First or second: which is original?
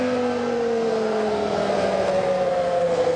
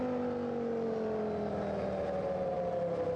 second